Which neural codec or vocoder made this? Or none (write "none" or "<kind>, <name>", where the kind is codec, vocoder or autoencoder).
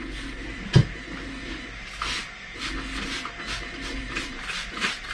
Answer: none